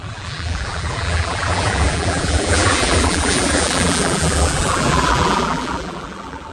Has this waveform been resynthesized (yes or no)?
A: yes